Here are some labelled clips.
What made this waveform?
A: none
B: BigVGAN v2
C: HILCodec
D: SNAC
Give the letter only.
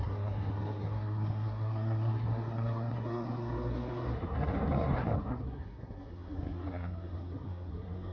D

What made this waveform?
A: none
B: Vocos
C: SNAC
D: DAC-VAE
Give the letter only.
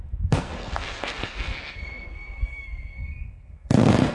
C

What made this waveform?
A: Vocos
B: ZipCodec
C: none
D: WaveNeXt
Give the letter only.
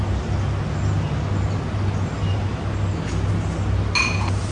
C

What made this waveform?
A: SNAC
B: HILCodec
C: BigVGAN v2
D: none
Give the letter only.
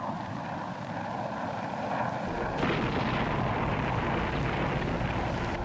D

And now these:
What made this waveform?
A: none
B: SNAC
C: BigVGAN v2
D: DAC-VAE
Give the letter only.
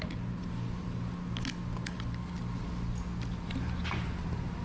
A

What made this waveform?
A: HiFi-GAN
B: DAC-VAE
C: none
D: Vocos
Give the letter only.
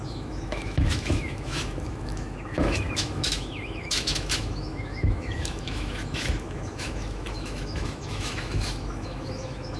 B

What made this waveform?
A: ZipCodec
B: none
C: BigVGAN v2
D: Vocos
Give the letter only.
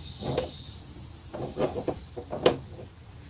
B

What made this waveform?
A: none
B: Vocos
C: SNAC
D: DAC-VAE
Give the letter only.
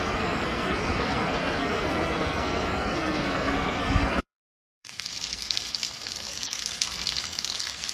C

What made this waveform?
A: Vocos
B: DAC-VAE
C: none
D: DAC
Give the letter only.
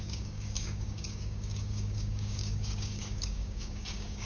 D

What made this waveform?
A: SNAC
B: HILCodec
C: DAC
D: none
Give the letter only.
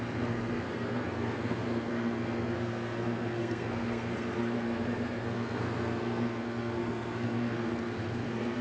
A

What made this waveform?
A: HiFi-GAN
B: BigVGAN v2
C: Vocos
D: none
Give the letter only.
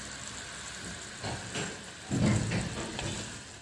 D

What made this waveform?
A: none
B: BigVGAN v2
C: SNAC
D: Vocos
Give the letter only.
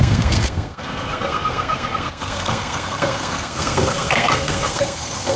C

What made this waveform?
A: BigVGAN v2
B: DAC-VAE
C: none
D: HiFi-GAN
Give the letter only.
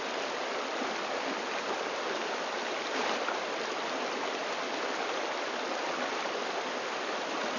C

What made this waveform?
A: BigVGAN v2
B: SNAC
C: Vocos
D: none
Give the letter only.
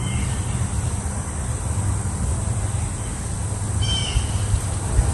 D